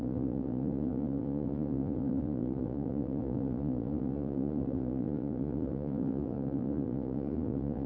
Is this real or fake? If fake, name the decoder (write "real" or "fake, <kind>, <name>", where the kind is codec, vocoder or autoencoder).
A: fake, vocoder, Vocos